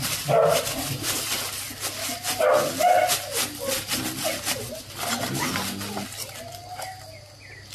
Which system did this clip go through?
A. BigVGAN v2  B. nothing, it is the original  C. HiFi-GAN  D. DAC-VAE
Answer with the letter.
B